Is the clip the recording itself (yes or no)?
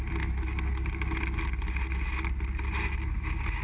yes